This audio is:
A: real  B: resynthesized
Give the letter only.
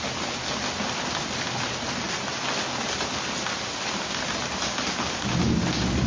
A